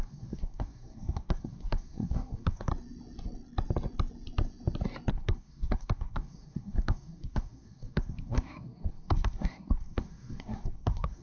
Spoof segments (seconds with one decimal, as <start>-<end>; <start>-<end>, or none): 0.0-2.7; 5.1-11.2